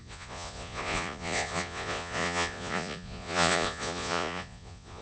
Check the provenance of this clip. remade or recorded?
remade